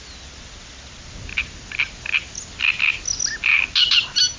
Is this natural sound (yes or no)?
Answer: yes